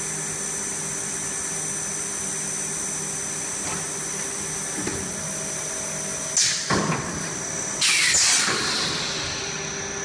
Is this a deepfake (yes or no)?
no